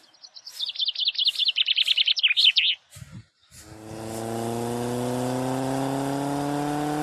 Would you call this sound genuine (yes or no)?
yes